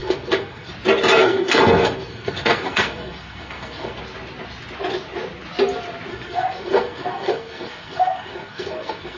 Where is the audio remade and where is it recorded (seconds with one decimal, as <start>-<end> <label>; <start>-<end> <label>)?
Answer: 0.0-0.7 remade; 0.7-1.2 recorded; 1.2-4.0 remade; 4.0-6.1 recorded; 6.1-9.2 remade